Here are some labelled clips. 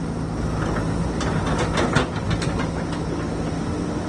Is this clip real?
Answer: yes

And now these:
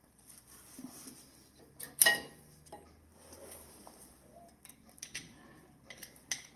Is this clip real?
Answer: yes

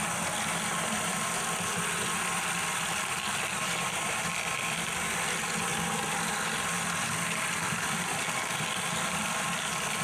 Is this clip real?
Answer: yes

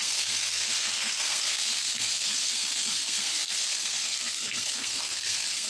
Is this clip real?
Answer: no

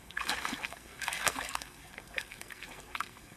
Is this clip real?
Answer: no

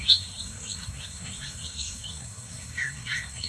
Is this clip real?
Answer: no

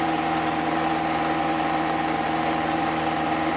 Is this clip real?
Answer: yes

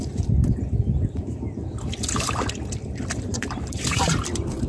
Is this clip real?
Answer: no